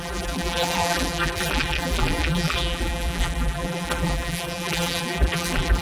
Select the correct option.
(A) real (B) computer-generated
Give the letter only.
B